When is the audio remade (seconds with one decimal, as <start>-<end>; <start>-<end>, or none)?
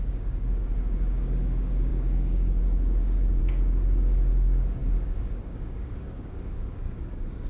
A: 0.0-7.5